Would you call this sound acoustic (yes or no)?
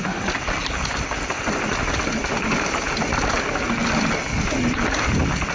yes